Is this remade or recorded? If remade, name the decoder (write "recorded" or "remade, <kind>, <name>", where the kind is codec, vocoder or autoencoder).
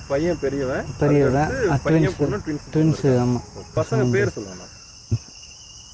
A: recorded